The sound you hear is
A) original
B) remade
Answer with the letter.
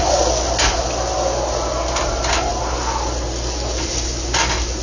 A